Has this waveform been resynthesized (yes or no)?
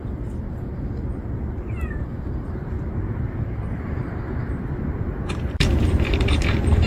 yes